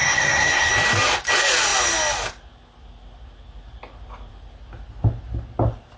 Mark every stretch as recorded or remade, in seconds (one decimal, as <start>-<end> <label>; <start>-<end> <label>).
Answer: 0.0-0.7 remade; 0.7-6.0 recorded